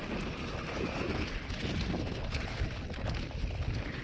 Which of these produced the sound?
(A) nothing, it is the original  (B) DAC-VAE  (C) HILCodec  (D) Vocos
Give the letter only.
A